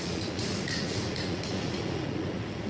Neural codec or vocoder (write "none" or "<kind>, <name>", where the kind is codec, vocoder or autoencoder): vocoder, Vocos